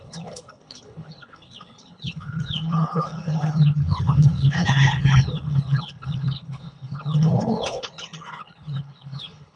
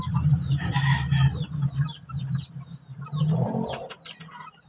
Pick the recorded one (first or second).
second